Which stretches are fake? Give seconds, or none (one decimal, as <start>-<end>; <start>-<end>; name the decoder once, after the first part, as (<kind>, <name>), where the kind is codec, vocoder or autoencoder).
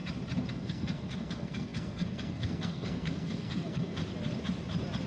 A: 0.5-4.0 (codec, SNAC)